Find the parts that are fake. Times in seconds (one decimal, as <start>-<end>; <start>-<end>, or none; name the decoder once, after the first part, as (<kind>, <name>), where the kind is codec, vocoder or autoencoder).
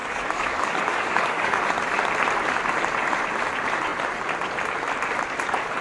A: 0.0-1.6 (codec, DAC)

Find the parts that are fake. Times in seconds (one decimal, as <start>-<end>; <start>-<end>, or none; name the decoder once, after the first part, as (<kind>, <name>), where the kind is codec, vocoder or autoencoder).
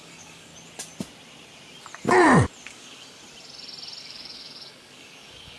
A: 0.0-0.5 (codec, DAC); 2.7-3.2; 4.0-5.6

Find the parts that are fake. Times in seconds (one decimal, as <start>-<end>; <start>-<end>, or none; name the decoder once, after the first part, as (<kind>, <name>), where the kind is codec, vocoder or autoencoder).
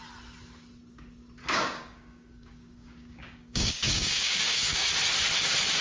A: 1.4-4.9 (codec, DAC)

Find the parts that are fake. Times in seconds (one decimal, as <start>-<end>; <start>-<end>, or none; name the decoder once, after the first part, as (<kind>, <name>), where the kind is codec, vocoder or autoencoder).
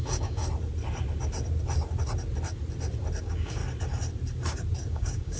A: 0.0-0.4 (codec, DAC); 3.2-3.6; 4.9-5.4